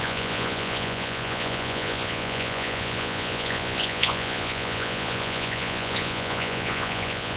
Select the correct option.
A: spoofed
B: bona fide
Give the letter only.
A